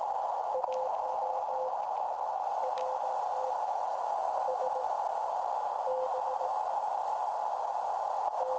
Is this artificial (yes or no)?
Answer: no